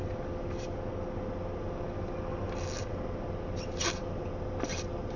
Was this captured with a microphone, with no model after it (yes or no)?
yes